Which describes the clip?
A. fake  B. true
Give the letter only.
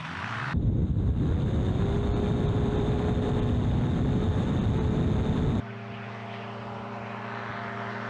A